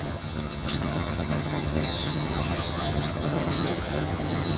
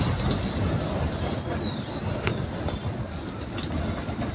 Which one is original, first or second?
second